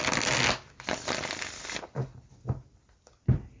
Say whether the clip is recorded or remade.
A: recorded